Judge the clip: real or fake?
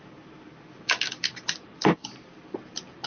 real